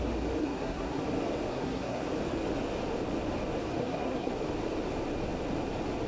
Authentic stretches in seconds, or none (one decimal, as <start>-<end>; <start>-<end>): 0.0-0.4; 1.0-1.5; 2.1-3.8; 4.3-6.1